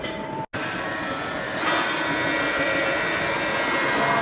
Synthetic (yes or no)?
no